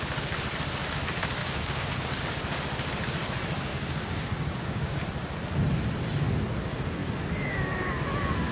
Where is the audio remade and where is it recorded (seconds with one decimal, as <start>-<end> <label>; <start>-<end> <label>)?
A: 0.0-1.4 recorded; 1.4-2.2 remade; 2.2-3.7 recorded; 3.7-5.0 remade; 5.0-8.5 recorded